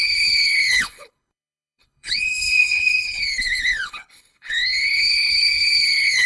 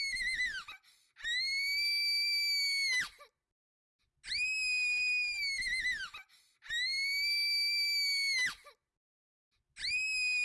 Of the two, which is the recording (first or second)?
second